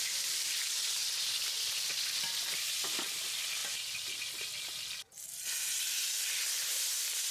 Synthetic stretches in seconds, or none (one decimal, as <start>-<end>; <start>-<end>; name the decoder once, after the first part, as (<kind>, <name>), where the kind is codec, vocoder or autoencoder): none